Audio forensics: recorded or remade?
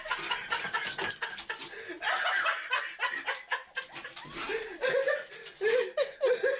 recorded